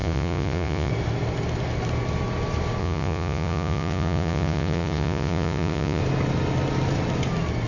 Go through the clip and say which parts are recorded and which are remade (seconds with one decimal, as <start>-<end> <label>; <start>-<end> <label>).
0.0-0.9 remade; 0.9-2.8 recorded; 2.8-6.0 remade; 6.0-7.7 recorded